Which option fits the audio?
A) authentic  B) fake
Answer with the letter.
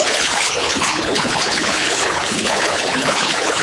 B